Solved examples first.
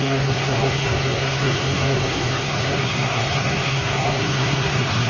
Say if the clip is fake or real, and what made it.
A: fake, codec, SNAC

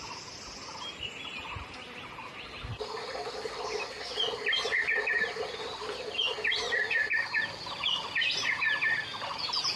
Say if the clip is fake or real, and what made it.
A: real